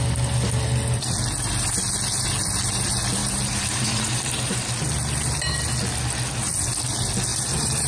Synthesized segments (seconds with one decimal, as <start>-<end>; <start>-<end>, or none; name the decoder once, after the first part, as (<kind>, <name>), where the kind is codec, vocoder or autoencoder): 3.2-4.6 (vocoder, BigVGAN v2); 7.3-7.9